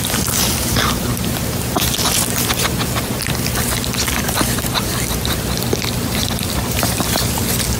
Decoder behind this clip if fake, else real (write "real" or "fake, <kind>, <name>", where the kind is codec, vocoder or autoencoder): fake, vocoder, BigVGAN v2